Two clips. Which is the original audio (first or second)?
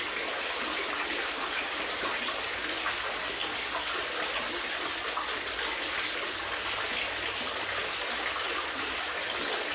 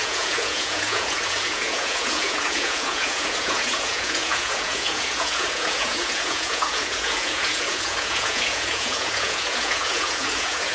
first